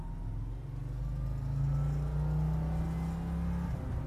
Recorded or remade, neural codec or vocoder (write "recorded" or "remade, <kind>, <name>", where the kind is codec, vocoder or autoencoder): recorded